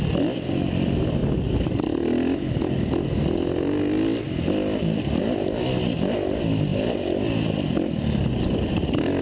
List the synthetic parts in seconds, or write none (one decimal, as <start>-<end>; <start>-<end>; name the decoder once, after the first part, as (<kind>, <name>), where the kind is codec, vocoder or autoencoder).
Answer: 6.7-9.2 (vocoder, BigVGAN v2)